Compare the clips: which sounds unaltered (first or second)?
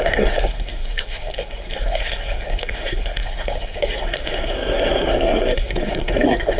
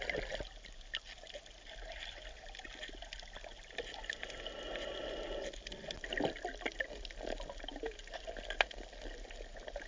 second